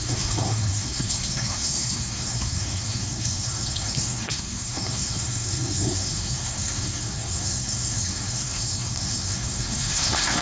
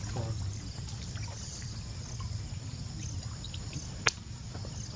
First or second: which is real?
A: second